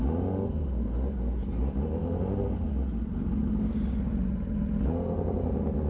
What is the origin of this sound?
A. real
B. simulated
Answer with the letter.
A